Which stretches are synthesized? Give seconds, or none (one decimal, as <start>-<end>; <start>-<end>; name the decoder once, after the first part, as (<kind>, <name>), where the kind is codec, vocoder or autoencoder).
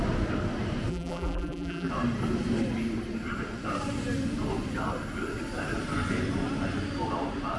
0.9-1.9 (vocoder, BigVGAN v2)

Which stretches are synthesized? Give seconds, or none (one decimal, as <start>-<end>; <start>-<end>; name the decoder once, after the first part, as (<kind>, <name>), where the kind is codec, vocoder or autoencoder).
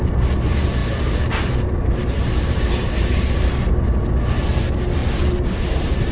0.8-3.8 (vocoder, BigVGAN v2)